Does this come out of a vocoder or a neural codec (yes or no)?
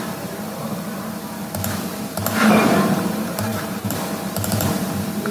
yes